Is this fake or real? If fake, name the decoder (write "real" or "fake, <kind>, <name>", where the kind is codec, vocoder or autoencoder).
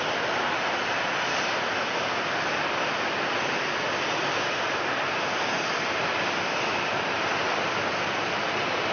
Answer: real